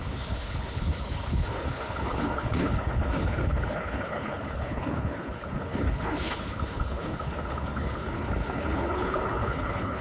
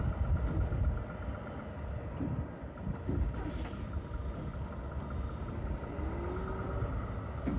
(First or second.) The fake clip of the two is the first